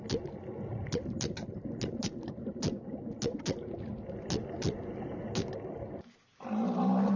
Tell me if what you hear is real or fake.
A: real